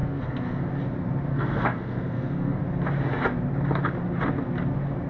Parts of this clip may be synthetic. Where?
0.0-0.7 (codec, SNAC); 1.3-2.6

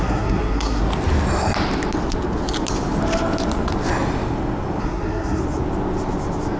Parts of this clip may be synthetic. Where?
0.0-0.8 (codec, SNAC); 4.8-5.4

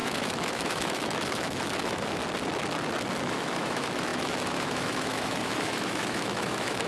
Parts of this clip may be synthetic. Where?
0.0-2.2 (autoencoder, DAC-VAE); 3.3-6.9

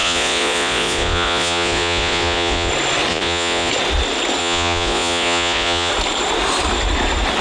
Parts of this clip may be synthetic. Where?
0.0-2.7 (vocoder, Vocos); 3.1-3.7; 4.4-5.9